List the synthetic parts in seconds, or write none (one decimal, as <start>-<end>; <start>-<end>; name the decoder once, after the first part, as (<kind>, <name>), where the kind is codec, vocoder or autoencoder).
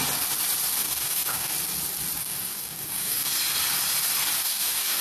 0.8-1.5 (codec, DAC); 2.2-3.3; 4.4-5.0